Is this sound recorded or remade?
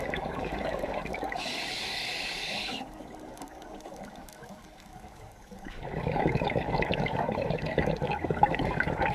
remade